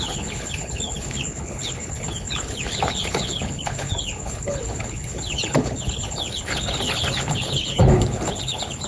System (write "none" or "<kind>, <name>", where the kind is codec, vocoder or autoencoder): codec, HILCodec